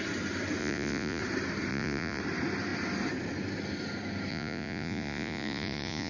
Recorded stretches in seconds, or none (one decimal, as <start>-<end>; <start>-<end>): 0.0-0.6; 1.2-1.7; 2.2-4.3